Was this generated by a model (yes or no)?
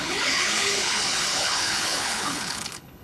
yes